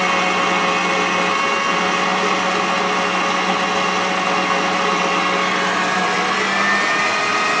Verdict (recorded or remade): recorded